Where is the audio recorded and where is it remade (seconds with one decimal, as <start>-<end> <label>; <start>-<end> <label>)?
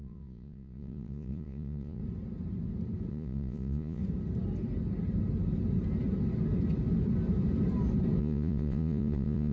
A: 0.0-2.0 remade; 2.0-3.1 recorded; 3.1-4.0 remade; 4.0-8.2 recorded; 8.2-9.5 remade